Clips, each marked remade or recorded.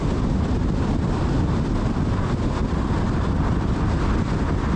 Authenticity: recorded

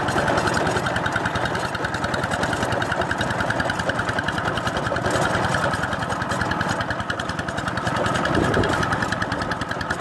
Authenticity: recorded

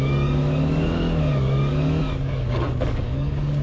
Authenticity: remade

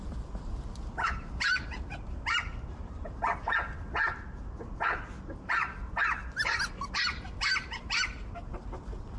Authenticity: recorded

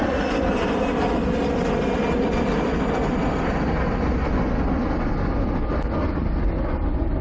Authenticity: recorded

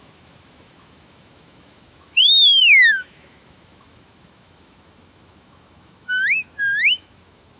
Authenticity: remade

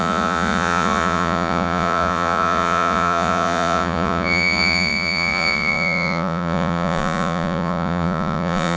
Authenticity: remade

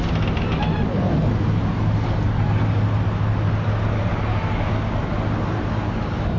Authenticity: recorded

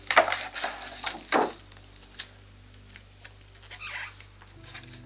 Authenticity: recorded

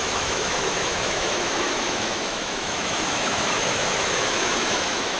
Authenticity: remade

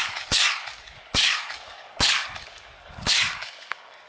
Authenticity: remade